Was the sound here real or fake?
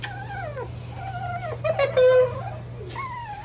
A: real